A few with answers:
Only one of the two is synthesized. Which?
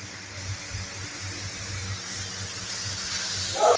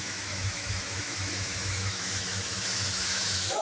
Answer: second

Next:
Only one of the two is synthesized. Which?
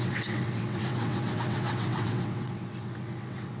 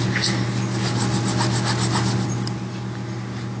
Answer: first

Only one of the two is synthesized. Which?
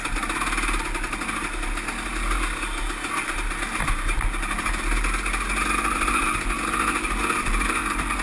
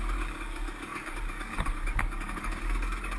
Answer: second